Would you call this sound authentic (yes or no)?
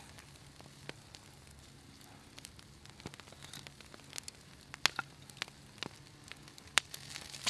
yes